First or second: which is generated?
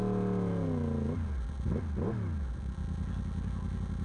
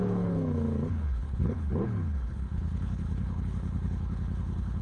second